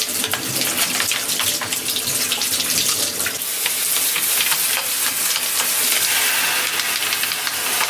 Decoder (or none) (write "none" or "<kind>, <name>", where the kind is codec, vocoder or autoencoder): none